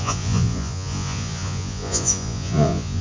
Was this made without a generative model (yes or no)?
no